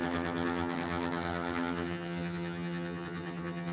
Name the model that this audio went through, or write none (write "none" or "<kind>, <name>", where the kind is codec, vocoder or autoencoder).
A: vocoder, HiFi-GAN